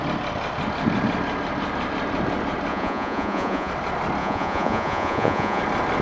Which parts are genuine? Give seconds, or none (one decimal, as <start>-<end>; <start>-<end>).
0.0-2.7; 3.7-4.2; 5.6-6.0